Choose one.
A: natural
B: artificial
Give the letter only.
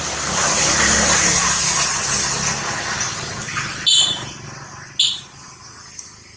A